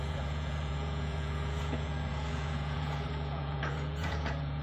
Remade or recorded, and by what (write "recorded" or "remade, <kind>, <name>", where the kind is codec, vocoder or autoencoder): remade, vocoder, Vocos